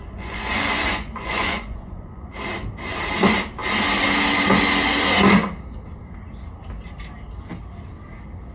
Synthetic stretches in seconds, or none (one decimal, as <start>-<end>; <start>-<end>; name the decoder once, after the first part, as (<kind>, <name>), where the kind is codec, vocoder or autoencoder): 0.0-2.3 (vocoder, Vocos)